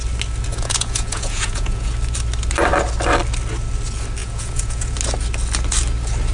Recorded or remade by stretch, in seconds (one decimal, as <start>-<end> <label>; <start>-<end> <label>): 0.0-0.5 recorded; 0.5-1.9 remade; 1.9-4.2 recorded; 4.2-4.9 remade; 4.9-6.3 recorded